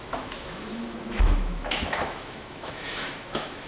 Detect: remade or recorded remade